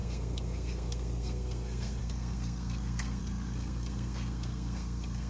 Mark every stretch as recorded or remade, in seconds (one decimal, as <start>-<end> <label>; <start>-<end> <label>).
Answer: 0.0-5.3 remade